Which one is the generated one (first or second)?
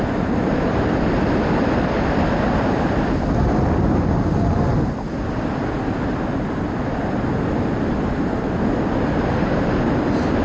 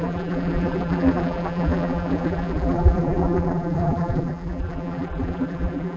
second